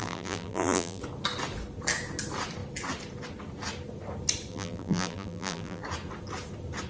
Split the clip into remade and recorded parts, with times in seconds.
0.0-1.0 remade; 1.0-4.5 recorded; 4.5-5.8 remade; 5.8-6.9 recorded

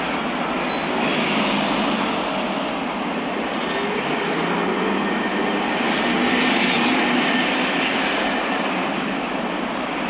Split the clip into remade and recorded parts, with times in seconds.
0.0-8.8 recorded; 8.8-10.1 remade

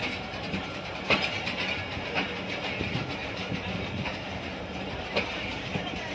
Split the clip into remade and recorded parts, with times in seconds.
0.0-1.8 remade; 1.8-3.5 recorded; 3.5-6.1 remade

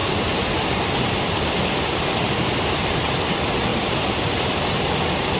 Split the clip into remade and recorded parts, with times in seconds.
0.0-3.2 remade; 3.2-3.7 recorded; 3.7-4.7 remade; 4.7-5.4 recorded

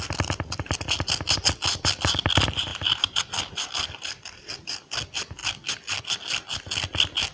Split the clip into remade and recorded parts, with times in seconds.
0.0-2.7 recorded; 2.7-3.3 remade; 3.3-7.3 recorded

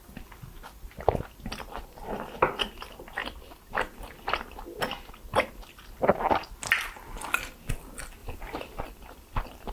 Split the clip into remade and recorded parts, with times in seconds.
0.0-9.7 recorded

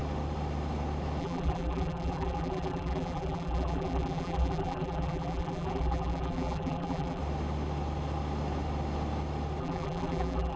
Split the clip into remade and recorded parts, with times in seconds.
0.0-1.2 recorded; 1.2-7.2 remade; 7.2-9.6 recorded; 9.6-10.6 remade